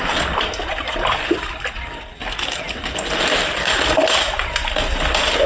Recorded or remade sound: recorded